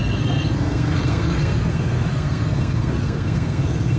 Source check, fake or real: fake